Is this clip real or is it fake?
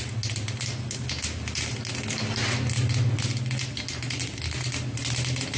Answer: real